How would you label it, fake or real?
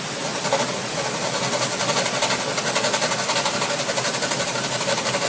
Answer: real